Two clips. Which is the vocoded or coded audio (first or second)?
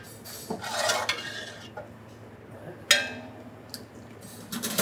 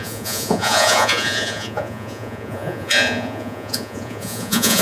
second